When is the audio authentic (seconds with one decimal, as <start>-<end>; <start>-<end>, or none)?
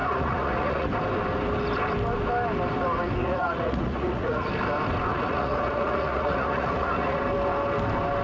0.9-3.2; 4.5-5.1; 7.2-8.2